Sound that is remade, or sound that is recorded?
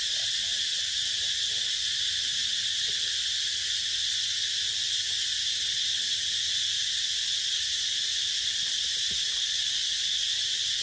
recorded